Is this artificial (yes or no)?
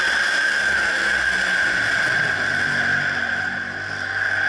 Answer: no